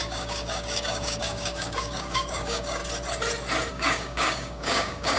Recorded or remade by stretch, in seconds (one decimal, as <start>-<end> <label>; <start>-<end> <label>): 0.0-2.8 remade; 2.8-3.7 recorded; 3.7-5.2 remade